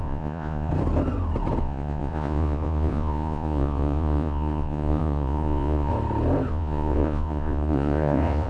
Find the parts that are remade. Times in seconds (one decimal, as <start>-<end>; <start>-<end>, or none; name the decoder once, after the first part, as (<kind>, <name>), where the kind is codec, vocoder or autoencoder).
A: 0.0-0.7 (vocoder, Vocos); 1.6-5.9; 6.5-8.5